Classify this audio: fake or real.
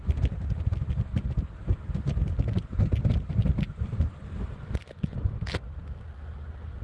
real